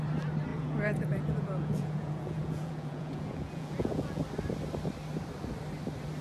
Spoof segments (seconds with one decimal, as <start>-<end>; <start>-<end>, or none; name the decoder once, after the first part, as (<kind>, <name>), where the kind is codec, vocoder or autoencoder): 0.5-4.2 (vocoder, Vocos)

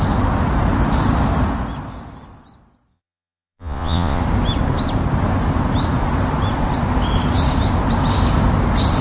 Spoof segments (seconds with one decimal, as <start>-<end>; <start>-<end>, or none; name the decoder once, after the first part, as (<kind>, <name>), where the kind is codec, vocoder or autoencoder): 2.9-4.2 (vocoder, Vocos)

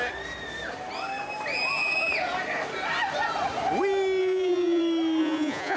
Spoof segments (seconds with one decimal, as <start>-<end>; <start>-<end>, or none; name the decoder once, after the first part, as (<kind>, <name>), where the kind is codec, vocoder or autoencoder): 4.2-4.8 (vocoder, Vocos); 5.2-5.8

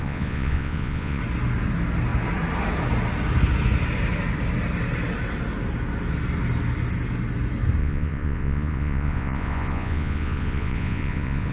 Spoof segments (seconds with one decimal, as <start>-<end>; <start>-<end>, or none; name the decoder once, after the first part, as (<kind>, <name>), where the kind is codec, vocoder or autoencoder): 0.0-1.2 (vocoder, Vocos); 7.8-11.5